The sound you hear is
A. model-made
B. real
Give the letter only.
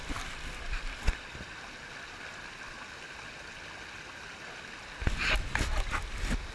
B